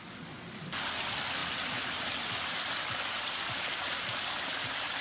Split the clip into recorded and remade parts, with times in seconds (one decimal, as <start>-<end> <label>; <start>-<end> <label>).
0.0-1.4 recorded; 1.4-4.4 remade; 4.4-5.0 recorded